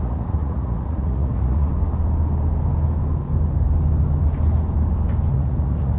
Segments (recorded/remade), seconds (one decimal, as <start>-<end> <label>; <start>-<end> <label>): 0.0-1.7 remade; 1.7-5.3 recorded; 5.3-6.0 remade